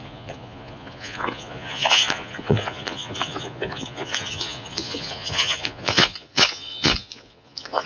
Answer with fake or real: fake